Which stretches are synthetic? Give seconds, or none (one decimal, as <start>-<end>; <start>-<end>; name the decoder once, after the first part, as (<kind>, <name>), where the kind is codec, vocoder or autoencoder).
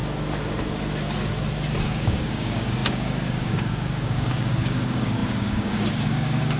1.8-6.6 (codec, DAC)